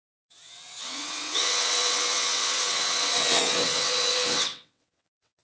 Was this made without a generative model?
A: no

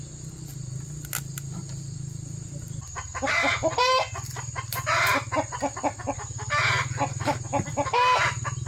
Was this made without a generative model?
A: yes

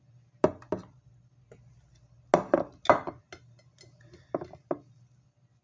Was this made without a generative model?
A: yes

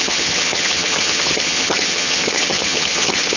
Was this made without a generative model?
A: no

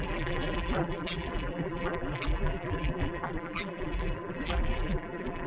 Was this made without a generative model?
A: no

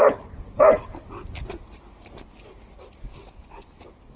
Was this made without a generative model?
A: yes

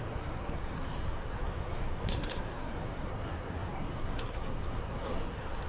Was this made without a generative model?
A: no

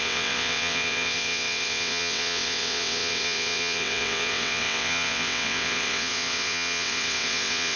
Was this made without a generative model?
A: no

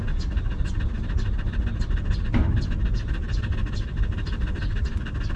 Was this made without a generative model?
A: yes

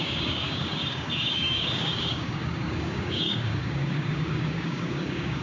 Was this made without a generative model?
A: no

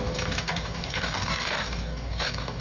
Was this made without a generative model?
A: no